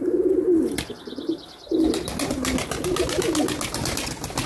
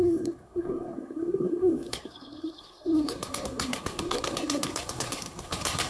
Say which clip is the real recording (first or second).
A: first